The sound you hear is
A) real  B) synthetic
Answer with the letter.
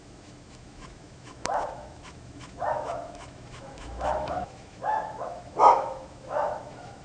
B